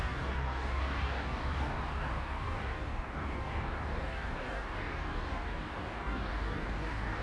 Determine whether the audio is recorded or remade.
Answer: remade